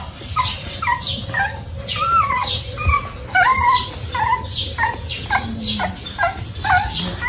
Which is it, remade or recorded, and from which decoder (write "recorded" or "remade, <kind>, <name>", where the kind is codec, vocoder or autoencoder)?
recorded